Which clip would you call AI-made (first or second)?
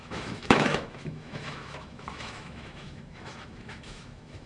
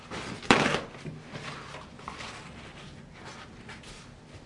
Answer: first